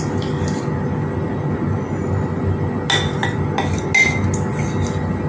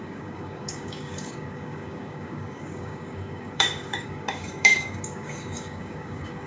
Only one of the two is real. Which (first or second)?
first